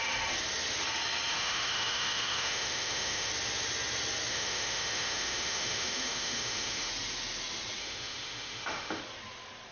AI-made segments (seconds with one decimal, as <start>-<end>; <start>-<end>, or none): 1.3-3.3; 4.3-6.9; 7.8-9.0